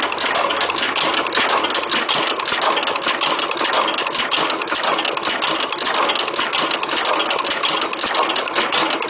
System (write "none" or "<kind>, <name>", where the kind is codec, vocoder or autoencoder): none